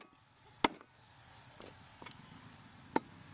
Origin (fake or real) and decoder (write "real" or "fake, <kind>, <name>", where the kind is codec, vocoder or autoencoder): real